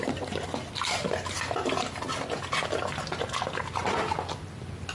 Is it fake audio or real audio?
real